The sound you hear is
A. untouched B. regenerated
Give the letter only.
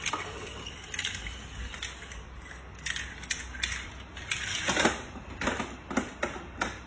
A